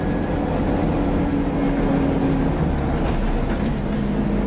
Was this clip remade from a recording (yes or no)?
no